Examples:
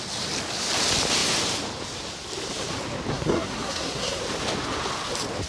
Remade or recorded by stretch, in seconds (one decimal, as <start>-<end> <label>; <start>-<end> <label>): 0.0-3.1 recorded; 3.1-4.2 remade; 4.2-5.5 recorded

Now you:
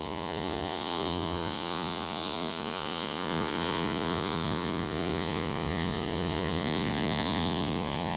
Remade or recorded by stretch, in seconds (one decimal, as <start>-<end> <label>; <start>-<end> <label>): 0.0-8.2 remade

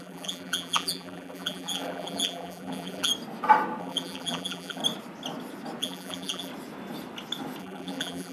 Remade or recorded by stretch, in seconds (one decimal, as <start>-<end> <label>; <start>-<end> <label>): 0.0-3.1 remade; 3.1-3.8 recorded; 3.8-4.8 remade; 4.8-5.8 recorded; 5.8-6.5 remade; 6.5-7.6 recorded; 7.6-8.3 remade

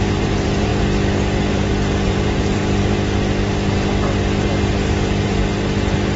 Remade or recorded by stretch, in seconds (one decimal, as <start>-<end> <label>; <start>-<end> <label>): 0.0-0.7 remade; 0.7-1.5 recorded; 1.5-2.6 remade; 2.6-6.2 recorded

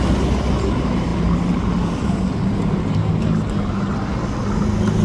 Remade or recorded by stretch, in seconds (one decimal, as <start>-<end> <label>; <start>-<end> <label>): 0.0-5.0 recorded